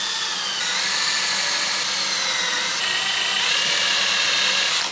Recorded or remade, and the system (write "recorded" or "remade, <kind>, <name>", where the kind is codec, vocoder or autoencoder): recorded